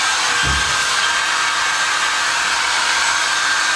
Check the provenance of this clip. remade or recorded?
recorded